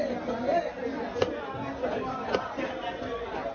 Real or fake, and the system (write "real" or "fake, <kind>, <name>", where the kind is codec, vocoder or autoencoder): real